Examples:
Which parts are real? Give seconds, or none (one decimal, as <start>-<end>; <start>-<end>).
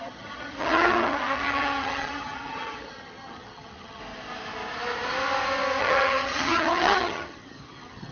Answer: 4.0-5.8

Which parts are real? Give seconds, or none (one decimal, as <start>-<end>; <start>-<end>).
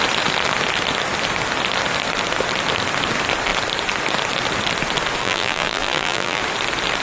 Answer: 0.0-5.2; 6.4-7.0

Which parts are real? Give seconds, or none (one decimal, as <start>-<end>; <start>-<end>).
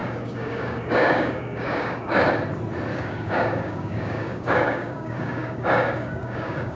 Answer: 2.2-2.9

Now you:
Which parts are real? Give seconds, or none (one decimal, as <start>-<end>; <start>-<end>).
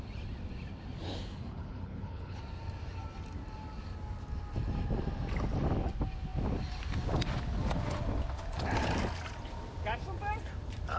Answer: 0.0-1.3; 2.4-11.0